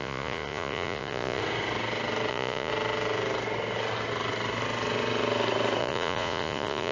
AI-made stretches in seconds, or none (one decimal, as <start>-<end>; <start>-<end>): 0.0-1.4; 2.3-2.7; 5.8-6.9